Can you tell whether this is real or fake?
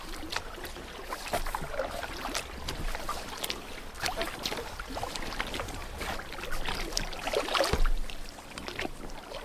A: real